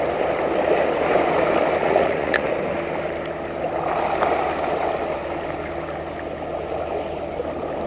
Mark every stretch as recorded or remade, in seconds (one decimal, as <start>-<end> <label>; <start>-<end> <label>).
0.0-1.8 recorded; 1.8-2.5 remade; 2.5-7.9 recorded